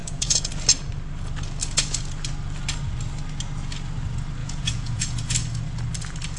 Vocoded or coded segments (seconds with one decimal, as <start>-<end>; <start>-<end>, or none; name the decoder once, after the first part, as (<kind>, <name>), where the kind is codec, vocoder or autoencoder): 0.0-0.5 (vocoder, Vocos); 4.4-5.4